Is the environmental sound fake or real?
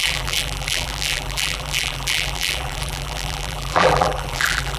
fake